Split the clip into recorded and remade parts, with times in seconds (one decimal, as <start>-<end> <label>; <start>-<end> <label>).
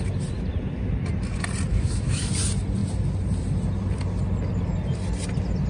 0.0-1.7 recorded; 1.7-2.3 remade; 2.3-5.7 recorded